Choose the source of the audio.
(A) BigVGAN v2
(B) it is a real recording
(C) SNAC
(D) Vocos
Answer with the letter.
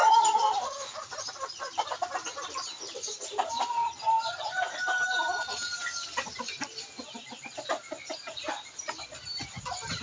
A